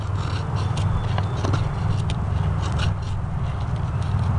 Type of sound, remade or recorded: recorded